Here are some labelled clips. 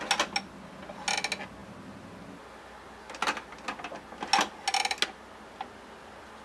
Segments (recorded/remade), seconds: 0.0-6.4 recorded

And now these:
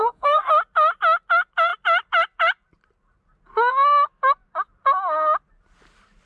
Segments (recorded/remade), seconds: 0.0-0.5 remade; 0.5-6.3 recorded

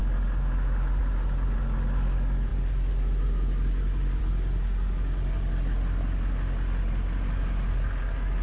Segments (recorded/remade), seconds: 0.0-8.4 recorded

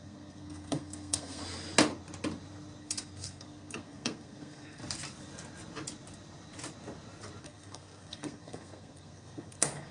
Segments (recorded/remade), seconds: 0.0-1.4 remade; 1.4-2.8 recorded; 2.8-4.8 remade; 4.8-7.4 recorded; 7.4-9.9 remade

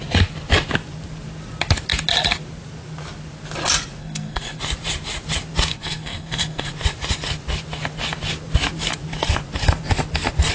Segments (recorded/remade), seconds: 0.0-4.0 recorded; 4.0-4.6 remade; 4.6-5.7 recorded; 5.7-6.7 remade; 6.7-10.5 recorded